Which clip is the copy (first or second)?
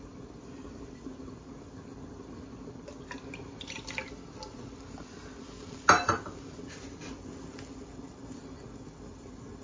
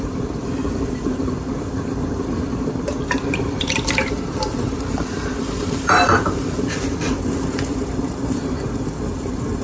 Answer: second